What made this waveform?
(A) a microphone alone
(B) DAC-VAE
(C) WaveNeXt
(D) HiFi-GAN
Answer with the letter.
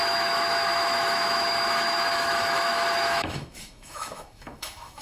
B